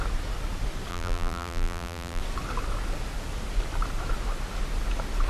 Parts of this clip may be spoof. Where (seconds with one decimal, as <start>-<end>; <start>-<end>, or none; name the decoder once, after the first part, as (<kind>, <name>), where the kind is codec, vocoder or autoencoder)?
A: 0.9-2.2 (vocoder, BigVGAN v2)